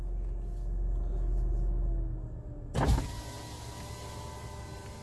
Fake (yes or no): no